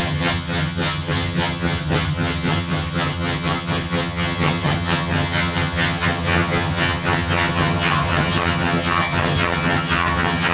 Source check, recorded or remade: remade